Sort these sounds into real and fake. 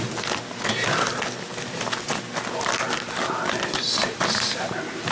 real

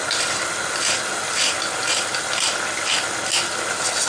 real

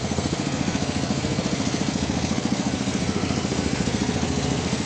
fake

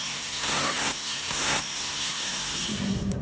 fake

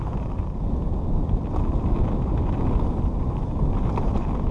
real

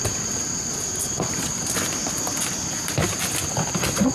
real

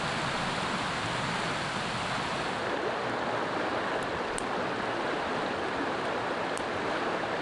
real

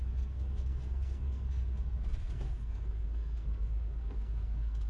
fake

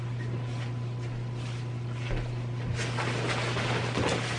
real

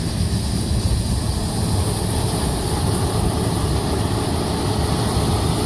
real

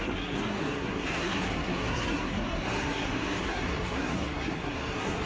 fake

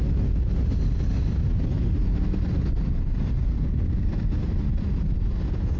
real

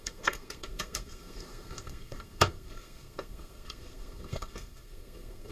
fake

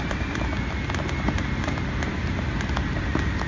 real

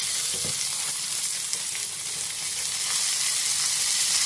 real